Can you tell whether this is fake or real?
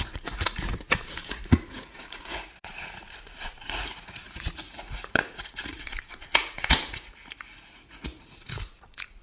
fake